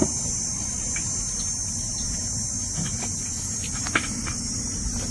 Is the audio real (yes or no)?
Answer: yes